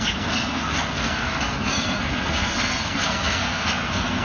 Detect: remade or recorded remade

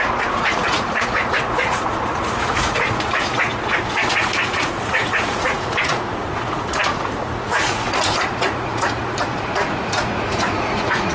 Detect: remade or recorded remade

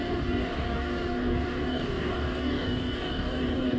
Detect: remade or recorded remade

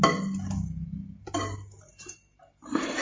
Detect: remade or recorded recorded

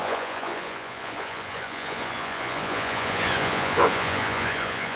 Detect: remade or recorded remade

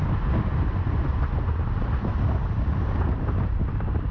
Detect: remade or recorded recorded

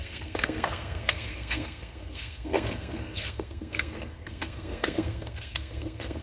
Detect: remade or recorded remade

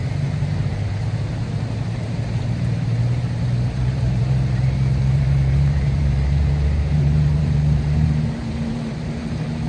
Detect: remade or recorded remade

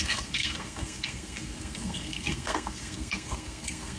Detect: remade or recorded remade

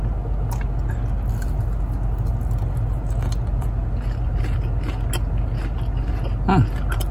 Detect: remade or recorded recorded